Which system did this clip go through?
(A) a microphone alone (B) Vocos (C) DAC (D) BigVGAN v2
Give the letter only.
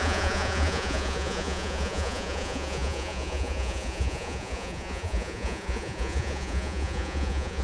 B